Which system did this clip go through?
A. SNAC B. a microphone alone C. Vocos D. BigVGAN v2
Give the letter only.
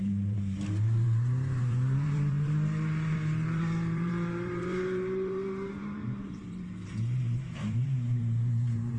D